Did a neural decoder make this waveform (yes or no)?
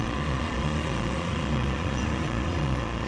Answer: yes